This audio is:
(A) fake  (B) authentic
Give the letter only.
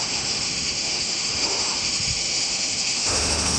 A